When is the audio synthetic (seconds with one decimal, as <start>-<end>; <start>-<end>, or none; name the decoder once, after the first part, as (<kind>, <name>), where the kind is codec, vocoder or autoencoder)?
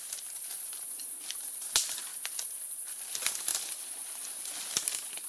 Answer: none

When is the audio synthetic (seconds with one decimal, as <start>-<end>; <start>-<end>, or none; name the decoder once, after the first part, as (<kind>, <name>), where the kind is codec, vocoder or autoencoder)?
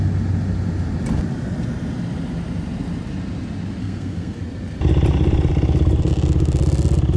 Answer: 3.8-4.4 (codec, SNAC)